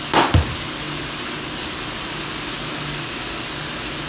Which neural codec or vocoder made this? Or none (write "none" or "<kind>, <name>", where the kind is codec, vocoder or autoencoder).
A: none